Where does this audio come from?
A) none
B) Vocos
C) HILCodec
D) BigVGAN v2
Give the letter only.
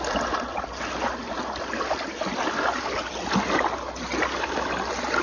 A